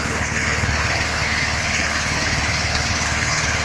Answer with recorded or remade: remade